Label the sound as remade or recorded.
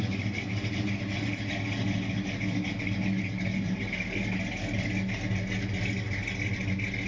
recorded